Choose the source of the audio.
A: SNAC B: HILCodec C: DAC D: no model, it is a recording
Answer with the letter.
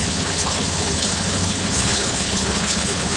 B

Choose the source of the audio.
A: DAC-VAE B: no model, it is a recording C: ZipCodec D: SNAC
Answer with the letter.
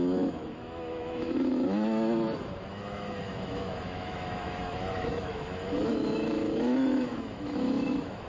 A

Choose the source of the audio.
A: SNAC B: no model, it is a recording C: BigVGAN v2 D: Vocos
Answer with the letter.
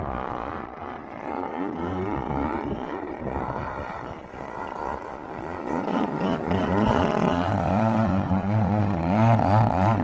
D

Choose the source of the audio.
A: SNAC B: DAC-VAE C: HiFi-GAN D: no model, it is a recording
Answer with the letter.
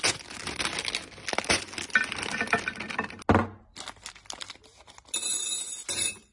D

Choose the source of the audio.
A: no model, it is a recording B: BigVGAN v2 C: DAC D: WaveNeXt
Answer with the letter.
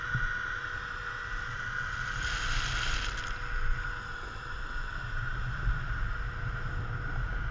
A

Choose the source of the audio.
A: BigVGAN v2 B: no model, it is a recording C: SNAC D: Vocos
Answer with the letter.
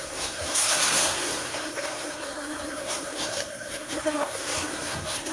C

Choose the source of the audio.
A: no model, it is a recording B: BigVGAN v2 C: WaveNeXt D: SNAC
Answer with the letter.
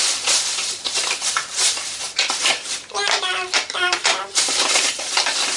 B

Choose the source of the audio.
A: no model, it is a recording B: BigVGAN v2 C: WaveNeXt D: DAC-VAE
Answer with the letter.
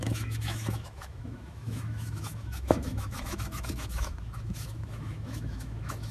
D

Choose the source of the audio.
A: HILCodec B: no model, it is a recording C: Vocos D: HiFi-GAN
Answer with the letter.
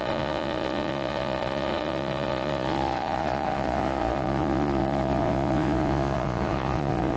C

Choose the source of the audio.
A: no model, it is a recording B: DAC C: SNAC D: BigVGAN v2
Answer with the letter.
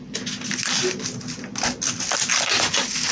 A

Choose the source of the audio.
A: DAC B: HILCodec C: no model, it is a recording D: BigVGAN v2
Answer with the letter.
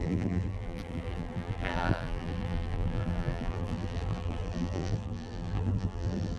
D